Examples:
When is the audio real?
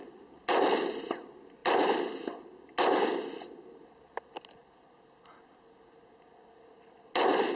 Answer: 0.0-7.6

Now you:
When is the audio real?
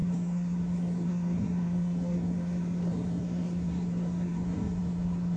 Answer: none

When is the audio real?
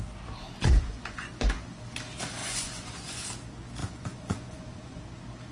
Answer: 0.0-0.4; 1.8-2.4; 3.2-3.8; 5.0-5.5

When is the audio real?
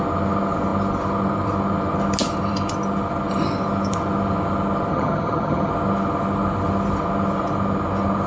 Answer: 0.0-4.9; 5.7-8.3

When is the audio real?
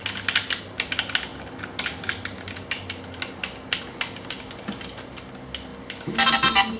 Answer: 0.0-6.8